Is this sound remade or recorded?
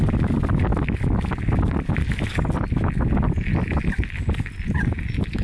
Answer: recorded